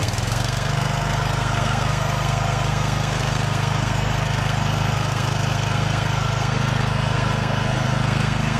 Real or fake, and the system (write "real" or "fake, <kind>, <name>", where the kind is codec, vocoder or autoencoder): fake, codec, SNAC